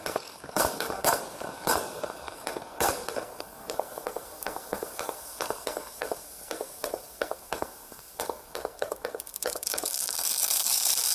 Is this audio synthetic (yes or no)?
yes